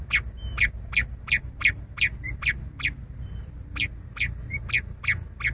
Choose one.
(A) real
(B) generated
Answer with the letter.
A